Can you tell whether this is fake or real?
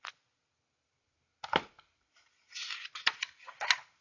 real